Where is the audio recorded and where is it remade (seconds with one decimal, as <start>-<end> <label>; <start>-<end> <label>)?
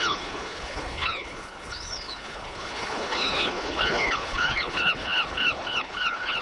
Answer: 0.0-6.4 remade